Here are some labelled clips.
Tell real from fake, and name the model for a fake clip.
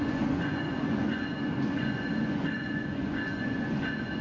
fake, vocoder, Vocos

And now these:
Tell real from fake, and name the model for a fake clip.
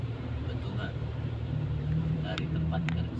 fake, vocoder, BigVGAN v2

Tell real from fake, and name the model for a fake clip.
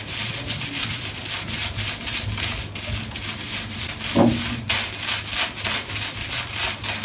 real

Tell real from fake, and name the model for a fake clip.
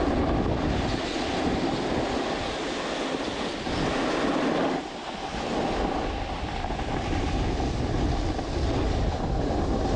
real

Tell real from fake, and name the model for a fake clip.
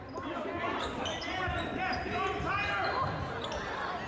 real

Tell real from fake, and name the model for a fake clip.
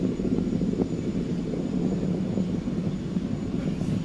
real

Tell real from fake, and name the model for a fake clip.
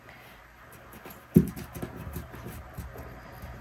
real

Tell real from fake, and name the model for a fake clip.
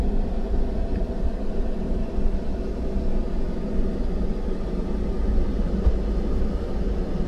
real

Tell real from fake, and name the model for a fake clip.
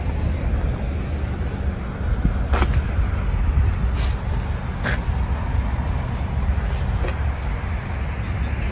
real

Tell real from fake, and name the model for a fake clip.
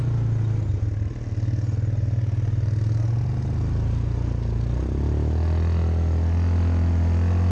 real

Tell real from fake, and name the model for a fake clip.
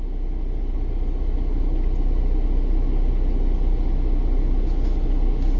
real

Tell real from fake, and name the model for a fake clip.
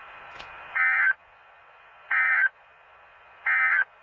fake, vocoder, Vocos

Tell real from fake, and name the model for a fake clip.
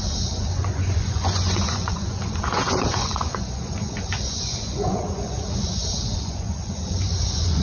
fake, vocoder, Vocos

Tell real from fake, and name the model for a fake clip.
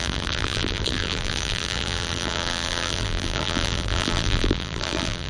fake, vocoder, BigVGAN v2